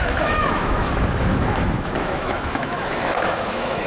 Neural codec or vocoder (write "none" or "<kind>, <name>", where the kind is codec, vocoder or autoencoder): autoencoder, DAC-VAE